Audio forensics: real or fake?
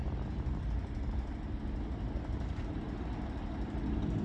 real